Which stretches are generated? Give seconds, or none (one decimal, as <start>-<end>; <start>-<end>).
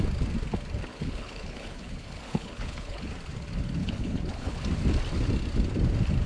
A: 0.9-3.1; 3.8-4.6